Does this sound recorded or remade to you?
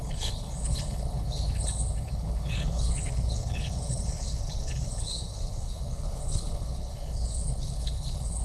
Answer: remade